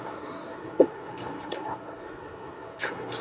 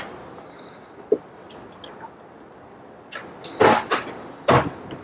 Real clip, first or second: second